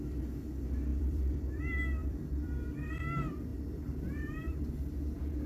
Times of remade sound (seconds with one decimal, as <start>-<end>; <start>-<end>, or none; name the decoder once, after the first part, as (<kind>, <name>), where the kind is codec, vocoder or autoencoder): 0.9-1.6 (vocoder, BigVGAN v2); 2.0-2.9; 3.5-4.7